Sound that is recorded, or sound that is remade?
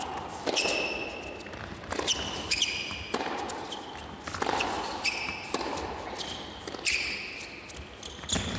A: recorded